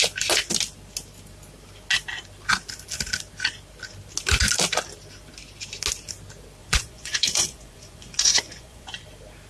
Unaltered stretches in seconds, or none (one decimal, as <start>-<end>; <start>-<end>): 0.0-6.6; 9.0-9.5